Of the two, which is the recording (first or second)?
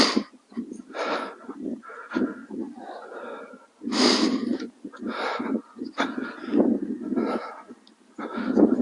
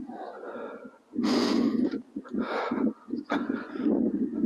first